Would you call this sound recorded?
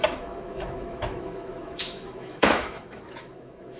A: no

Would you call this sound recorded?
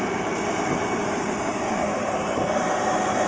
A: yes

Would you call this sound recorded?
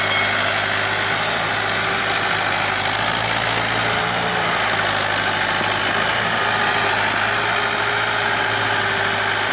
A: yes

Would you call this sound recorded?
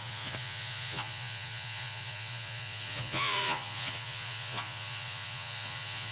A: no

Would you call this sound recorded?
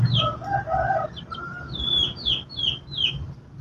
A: yes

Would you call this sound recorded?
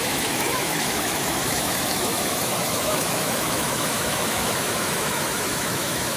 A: no